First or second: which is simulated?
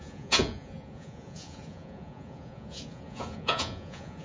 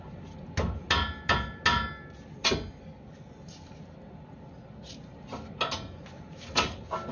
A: first